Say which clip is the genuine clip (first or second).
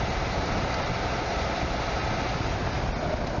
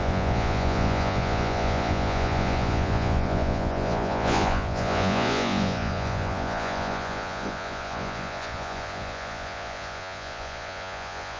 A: first